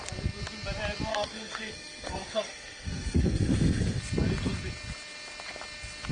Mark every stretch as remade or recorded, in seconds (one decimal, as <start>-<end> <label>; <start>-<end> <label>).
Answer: 0.0-1.1 recorded; 1.1-4.0 remade; 4.0-6.1 recorded